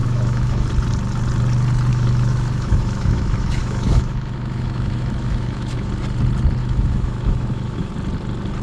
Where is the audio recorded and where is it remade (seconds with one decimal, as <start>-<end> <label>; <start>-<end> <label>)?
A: 0.0-0.7 remade; 0.7-1.9 recorded; 1.9-5.9 remade; 5.9-6.6 recorded; 6.6-7.9 remade; 7.9-8.6 recorded